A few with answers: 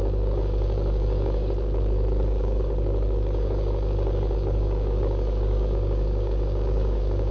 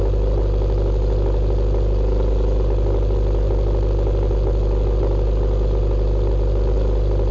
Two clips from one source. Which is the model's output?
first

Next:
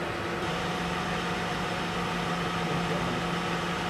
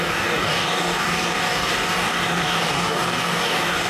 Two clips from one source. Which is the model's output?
second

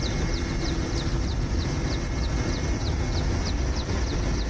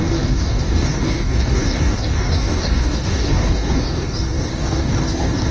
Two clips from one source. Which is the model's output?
second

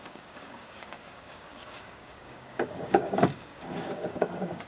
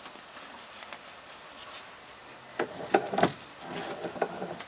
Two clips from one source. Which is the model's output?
first